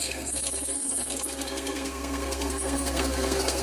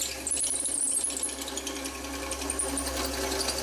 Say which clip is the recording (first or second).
second